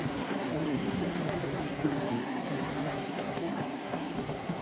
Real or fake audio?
fake